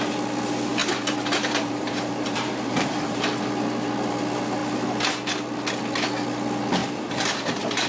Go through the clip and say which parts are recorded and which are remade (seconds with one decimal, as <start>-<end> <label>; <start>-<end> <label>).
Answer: 0.0-0.8 recorded; 0.8-3.2 remade; 3.2-6.8 recorded; 6.8-7.9 remade